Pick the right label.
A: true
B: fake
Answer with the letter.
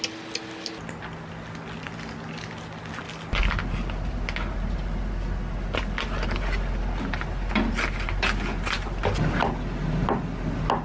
A